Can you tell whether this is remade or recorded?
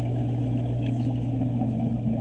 remade